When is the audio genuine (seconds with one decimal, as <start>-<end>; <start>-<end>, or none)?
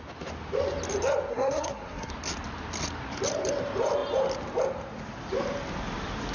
0.0-1.3; 2.1-6.3